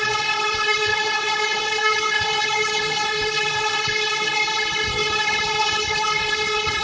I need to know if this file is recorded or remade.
remade